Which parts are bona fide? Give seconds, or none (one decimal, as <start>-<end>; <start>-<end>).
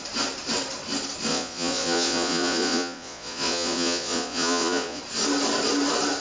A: 0.0-1.3; 5.0-6.2